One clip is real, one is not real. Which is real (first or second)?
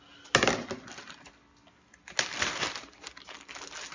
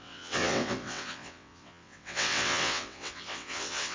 first